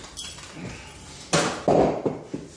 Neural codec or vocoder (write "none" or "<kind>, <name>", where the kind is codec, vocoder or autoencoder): none